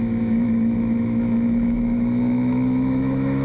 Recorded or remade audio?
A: remade